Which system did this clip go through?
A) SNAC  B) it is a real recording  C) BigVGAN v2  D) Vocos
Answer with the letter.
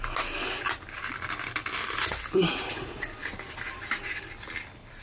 B